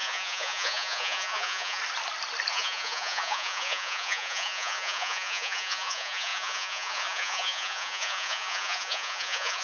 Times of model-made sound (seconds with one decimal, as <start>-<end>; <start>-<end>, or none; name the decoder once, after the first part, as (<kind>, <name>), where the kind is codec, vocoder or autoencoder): 0.0-1.8 (vocoder, Vocos); 2.5-9.6